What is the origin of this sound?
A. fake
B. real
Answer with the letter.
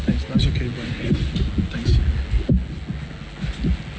B